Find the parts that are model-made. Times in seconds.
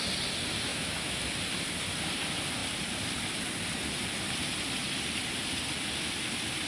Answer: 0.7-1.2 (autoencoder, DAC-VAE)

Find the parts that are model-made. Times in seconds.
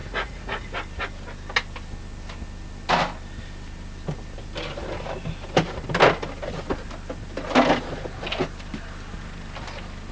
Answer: 0.0-0.7 (vocoder, Vocos)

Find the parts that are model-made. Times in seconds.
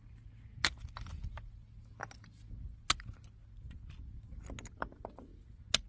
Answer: none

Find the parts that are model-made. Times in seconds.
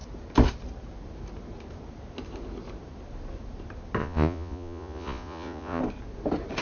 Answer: 4.0-5.8 (vocoder, Vocos)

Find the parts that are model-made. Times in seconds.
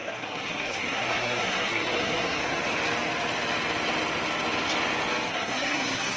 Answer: 0.0-2.6 (codec, SNAC); 5.3-6.2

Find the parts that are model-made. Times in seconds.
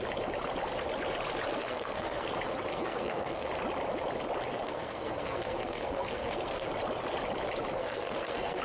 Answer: 1.5-2.3 (codec, SNAC); 2.7-3.5; 4.5-6.7; 7.8-8.6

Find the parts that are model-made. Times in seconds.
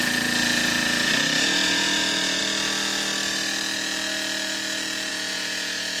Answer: 0.0-2.4 (vocoder, Vocos); 5.1-6.0